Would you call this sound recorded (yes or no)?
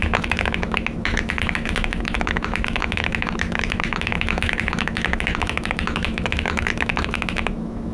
no